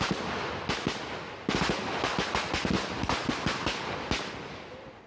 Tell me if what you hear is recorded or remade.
recorded